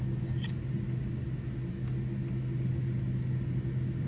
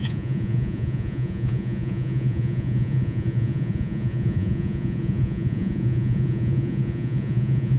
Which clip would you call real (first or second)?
first